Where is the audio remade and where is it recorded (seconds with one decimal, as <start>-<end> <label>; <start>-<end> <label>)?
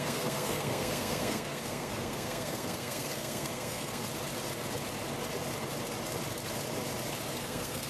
0.0-4.0 remade; 4.0-7.3 recorded; 7.3-7.9 remade